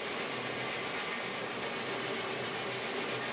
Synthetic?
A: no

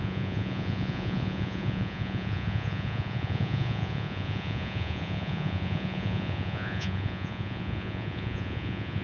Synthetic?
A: yes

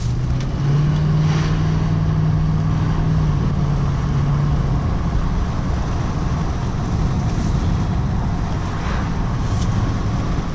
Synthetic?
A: no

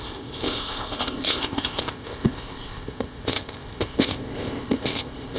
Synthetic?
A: yes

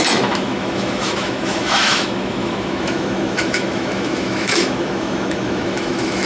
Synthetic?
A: yes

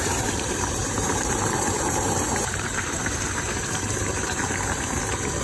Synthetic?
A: yes